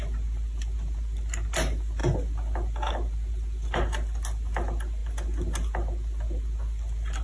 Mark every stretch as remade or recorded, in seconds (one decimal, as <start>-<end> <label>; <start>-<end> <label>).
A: 0.0-7.2 recorded